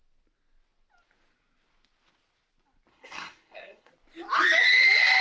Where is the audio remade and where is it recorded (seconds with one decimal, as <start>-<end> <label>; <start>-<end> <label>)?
0.0-2.9 recorded; 2.9-3.9 remade; 3.9-5.2 recorded